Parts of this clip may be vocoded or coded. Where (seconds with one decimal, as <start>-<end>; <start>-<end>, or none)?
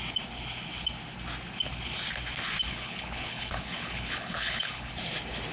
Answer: 2.6-4.9